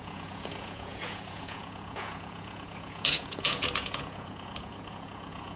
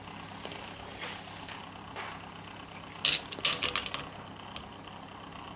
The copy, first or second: first